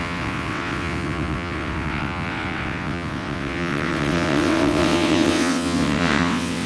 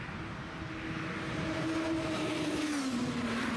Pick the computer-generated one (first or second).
first